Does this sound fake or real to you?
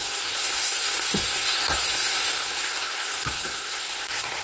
fake